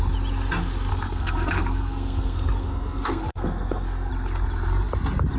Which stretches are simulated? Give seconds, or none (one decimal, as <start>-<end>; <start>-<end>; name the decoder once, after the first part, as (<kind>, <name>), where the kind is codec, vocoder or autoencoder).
0.9-4.1 (codec, SNAC)